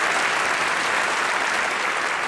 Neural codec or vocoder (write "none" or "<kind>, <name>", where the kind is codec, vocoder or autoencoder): none